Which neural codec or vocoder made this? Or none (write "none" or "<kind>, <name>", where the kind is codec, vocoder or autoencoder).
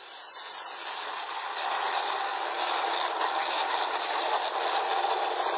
none